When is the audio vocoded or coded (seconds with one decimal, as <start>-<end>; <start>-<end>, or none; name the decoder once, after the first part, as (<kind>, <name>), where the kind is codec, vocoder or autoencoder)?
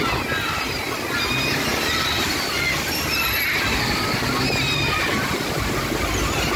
1.7-3.8 (vocoder, BigVGAN v2)